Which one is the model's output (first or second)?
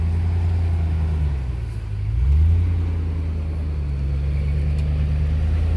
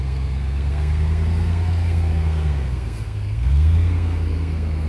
second